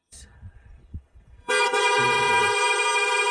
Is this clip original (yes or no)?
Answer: no